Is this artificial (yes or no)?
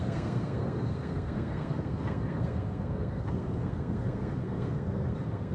yes